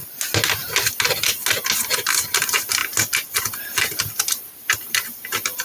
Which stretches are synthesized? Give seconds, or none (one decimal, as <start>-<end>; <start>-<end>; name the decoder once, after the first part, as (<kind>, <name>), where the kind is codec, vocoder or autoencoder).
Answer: 2.4-2.8 (vocoder, BigVGAN v2)